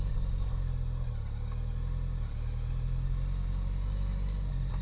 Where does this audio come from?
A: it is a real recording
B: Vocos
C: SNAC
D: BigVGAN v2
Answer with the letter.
A